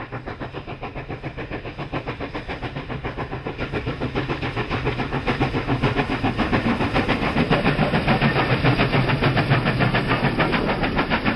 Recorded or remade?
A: recorded